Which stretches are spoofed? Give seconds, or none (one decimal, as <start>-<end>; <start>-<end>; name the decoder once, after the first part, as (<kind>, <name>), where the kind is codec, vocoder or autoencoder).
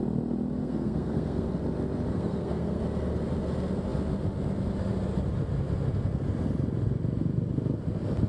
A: 0.6-1.5 (codec, SNAC); 2.1-2.8